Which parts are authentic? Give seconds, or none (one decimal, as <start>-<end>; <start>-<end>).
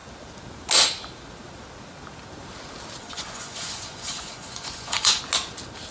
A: 0.0-3.0; 5.2-5.9